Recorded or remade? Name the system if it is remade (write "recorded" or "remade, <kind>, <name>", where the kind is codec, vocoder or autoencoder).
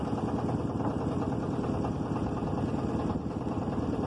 recorded